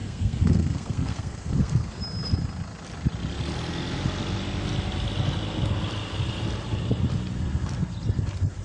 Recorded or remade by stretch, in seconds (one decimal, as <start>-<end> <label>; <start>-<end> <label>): 0.0-2.0 remade; 2.0-8.6 recorded